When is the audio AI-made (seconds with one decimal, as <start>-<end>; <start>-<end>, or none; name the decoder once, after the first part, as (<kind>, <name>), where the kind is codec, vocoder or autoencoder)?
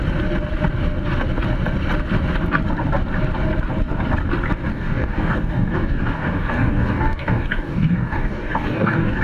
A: 4.7-9.2 (codec, DAC)